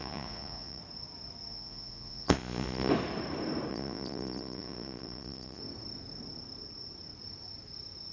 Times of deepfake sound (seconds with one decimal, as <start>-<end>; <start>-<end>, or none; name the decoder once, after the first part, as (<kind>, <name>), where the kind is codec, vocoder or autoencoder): 0.0-0.8 (vocoder, Vocos); 1.5-2.9; 3.7-5.6